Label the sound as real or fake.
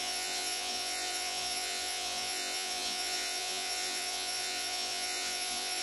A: fake